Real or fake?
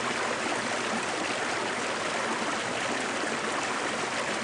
real